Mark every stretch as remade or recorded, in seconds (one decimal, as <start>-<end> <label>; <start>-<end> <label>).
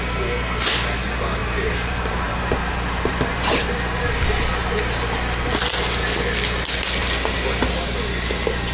0.0-1.4 recorded; 1.4-2.5 remade; 2.5-8.7 recorded